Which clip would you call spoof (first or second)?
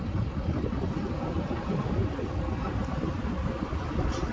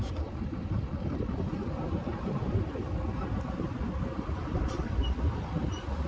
second